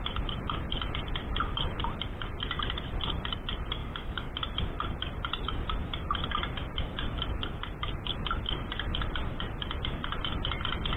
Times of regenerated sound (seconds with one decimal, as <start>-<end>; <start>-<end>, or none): 3.8-4.3